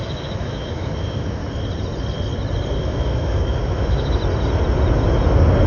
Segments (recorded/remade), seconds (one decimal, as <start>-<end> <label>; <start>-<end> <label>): 0.0-1.4 remade; 1.4-2.8 recorded; 2.8-4.2 remade; 4.2-5.7 recorded